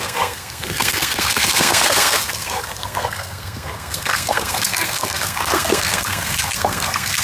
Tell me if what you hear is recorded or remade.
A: remade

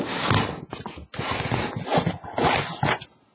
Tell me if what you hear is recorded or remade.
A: recorded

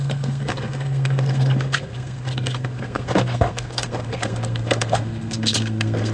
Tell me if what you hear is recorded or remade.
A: remade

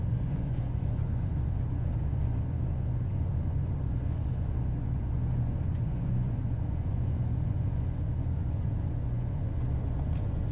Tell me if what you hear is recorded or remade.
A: remade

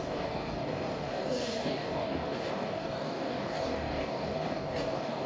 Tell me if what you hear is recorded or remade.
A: remade